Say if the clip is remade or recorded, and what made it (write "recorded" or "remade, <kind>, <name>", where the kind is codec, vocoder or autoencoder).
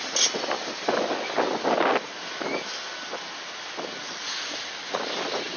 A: recorded